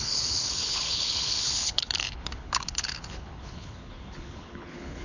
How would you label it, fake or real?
fake